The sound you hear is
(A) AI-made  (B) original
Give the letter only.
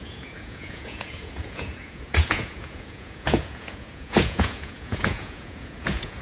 A